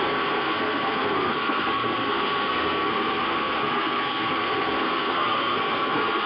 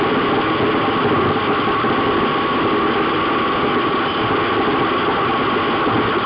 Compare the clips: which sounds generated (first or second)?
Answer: first